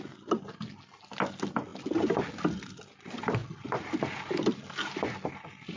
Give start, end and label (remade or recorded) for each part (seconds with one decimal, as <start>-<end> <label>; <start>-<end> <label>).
0.0-5.8 recorded